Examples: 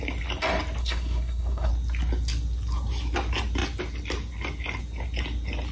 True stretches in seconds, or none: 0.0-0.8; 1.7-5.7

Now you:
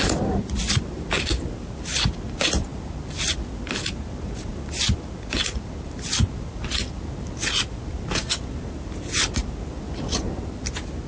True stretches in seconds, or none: 0.0-11.1

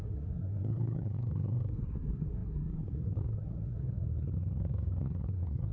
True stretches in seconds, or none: none

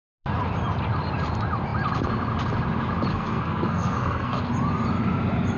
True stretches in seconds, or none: 0.0-3.1; 4.5-5.6